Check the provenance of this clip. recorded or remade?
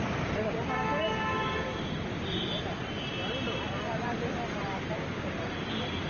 recorded